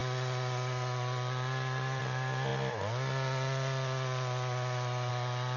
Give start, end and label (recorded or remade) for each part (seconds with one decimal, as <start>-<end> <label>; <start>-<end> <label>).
0.0-5.6 recorded